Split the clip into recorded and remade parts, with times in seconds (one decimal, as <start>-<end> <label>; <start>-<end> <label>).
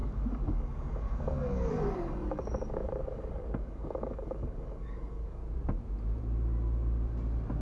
0.0-5.4 remade; 5.4-7.6 recorded